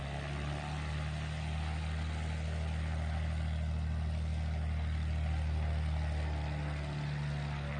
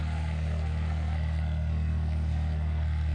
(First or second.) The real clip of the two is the first